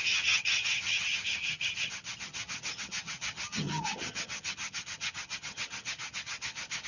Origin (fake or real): fake